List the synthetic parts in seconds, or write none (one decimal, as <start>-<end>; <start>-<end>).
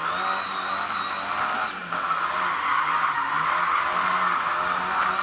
none